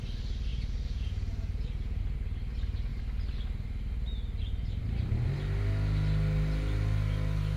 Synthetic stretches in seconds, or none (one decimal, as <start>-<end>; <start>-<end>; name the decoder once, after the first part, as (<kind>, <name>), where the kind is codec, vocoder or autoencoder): 0.5-2.0 (vocoder, Vocos)